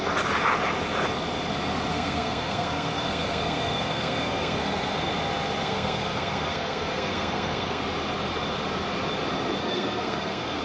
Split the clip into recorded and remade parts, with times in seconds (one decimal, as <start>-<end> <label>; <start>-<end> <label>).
0.0-1.9 recorded; 1.9-5.1 remade; 5.1-5.6 recorded; 5.6-7.8 remade; 7.8-9.6 recorded; 9.6-10.6 remade